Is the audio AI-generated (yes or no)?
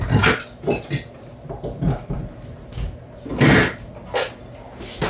no